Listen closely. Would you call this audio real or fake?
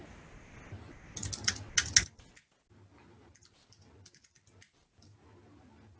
real